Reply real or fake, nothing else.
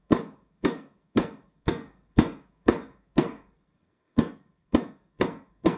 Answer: fake